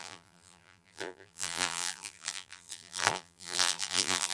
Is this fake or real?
fake